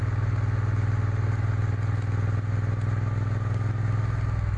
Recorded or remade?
recorded